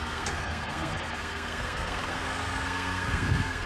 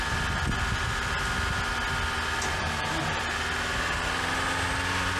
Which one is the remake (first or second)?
first